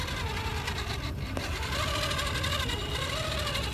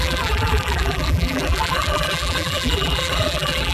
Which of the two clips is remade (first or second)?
second